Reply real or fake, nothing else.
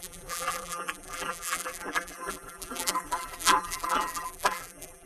fake